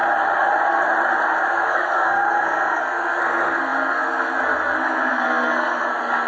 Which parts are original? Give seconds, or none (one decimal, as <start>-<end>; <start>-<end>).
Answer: 0.0-1.5